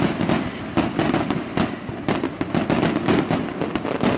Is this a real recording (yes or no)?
yes